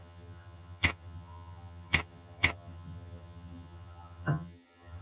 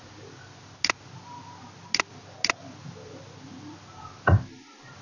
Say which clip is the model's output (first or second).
first